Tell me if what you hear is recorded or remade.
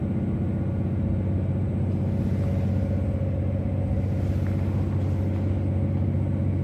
recorded